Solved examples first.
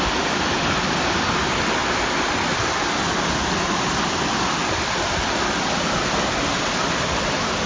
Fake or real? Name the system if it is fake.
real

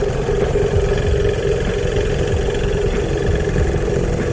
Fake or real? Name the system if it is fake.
real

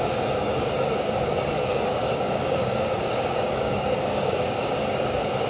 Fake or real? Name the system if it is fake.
fake, codec, DAC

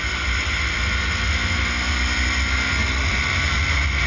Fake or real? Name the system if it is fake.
real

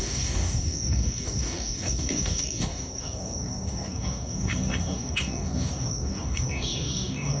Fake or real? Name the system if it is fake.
fake, codec, DAC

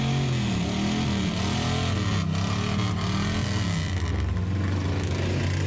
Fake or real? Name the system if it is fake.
real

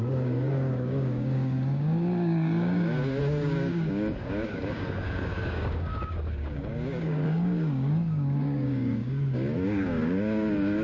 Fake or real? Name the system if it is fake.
fake, codec, DAC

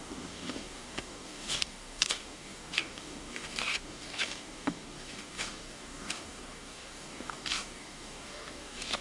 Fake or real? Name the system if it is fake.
fake, codec, DAC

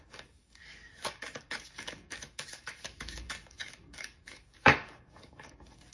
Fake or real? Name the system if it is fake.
fake, codec, DAC